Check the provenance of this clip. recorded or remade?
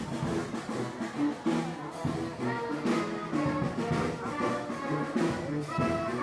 recorded